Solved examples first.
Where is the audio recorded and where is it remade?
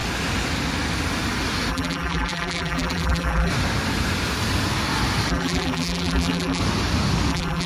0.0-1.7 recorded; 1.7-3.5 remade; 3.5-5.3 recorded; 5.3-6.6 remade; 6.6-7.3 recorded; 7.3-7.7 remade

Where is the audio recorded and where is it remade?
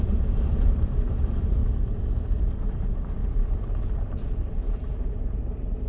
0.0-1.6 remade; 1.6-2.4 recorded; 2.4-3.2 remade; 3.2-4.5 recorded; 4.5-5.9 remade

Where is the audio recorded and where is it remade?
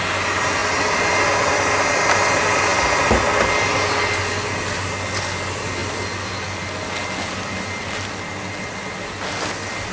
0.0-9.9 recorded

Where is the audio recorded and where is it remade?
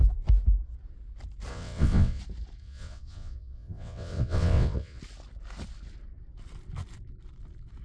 0.0-1.5 recorded; 1.5-2.2 remade; 2.2-2.6 recorded; 2.6-5.0 remade; 5.0-7.8 recorded